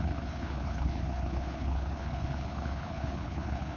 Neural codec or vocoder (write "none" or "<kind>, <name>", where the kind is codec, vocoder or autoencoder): codec, HILCodec